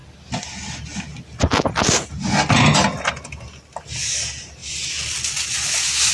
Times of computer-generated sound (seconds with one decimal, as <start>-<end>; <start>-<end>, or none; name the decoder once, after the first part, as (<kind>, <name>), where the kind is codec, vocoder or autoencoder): none